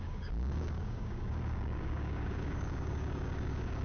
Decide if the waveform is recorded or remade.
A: remade